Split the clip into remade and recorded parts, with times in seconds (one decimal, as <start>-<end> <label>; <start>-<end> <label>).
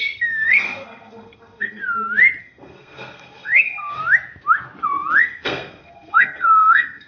0.0-1.8 remade; 1.8-2.4 recorded; 2.4-4.0 remade; 4.0-5.2 recorded; 5.2-7.1 remade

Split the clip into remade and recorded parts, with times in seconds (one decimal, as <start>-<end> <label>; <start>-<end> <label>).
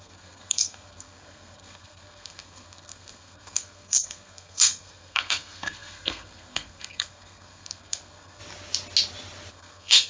0.0-8.4 remade; 8.4-9.5 recorded; 9.5-10.1 remade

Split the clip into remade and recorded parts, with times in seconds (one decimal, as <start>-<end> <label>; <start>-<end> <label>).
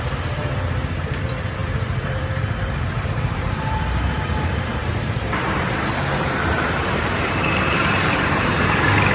0.0-9.1 remade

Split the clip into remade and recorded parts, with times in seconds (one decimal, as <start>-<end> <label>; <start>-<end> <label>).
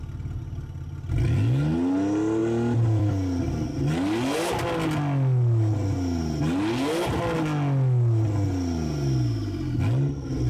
0.0-2.4 recorded; 2.4-3.1 remade; 3.1-10.5 recorded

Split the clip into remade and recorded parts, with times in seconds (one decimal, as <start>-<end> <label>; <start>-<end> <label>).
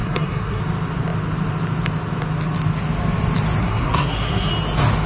0.0-0.6 remade; 0.6-3.6 recorded; 3.6-4.5 remade; 4.5-5.1 recorded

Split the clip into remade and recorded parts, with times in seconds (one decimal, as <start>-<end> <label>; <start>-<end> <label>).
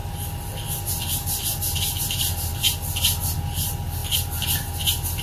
0.0-5.2 recorded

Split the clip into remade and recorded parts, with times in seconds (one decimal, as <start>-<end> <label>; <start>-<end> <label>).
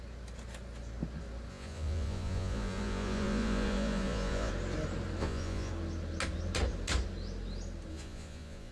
0.0-1.5 recorded; 1.5-4.5 remade; 4.5-5.2 recorded; 5.2-5.7 remade; 5.7-7.9 recorded; 7.9-8.7 remade